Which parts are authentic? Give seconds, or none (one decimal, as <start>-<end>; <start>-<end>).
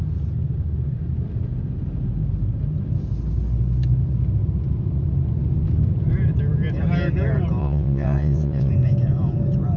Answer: 0.0-7.6; 8.7-9.8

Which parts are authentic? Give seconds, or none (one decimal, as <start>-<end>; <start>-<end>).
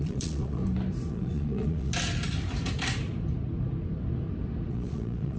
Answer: 0.6-1.1; 1.9-4.7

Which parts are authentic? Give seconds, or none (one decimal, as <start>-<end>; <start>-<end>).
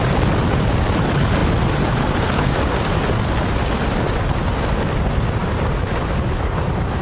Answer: 0.0-7.0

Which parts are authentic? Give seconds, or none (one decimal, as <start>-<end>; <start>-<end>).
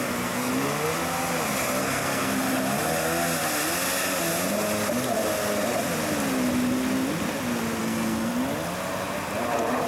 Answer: 0.5-1.8; 2.4-7.8; 8.3-9.9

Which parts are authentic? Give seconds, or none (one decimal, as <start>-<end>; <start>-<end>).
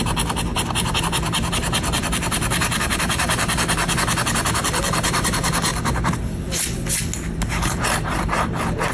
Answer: 0.5-1.0; 3.8-4.6; 5.7-7.5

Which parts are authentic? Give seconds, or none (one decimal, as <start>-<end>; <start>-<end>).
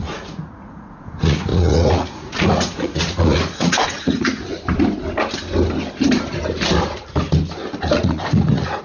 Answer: 4.5-7.9